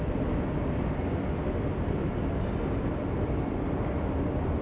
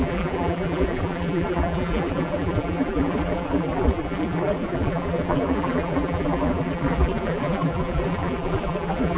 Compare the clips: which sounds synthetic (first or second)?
second